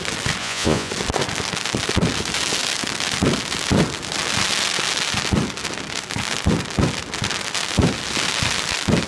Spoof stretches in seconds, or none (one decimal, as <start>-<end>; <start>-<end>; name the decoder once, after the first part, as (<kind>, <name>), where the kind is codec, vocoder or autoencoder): 0.4-0.9 (vocoder, Vocos)